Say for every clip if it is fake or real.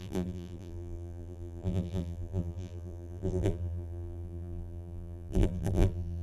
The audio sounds fake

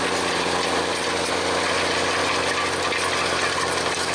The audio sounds real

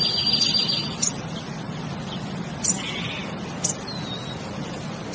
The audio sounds fake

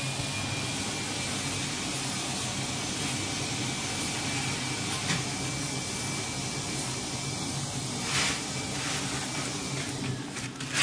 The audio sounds real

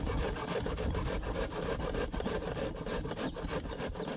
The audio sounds real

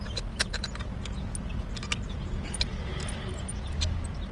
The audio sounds real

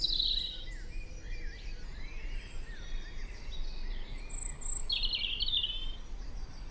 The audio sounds real